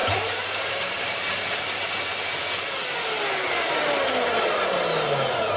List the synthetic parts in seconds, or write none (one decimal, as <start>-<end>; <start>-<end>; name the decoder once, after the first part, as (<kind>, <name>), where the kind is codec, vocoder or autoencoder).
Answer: 0.0-1.4 (vocoder, BigVGAN v2)